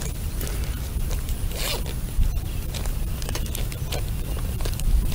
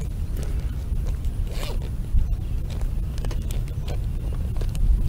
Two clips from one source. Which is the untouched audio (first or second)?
second